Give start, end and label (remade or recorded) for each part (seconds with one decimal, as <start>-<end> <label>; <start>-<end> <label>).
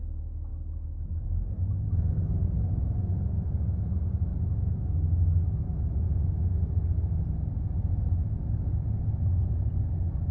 0.0-10.3 recorded